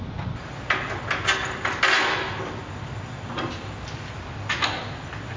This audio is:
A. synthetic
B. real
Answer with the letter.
B